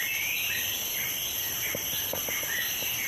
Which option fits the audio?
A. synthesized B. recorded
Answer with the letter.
B